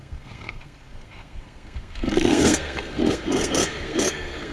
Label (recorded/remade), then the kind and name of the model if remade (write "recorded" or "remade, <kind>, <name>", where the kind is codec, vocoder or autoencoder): remade, codec, SNAC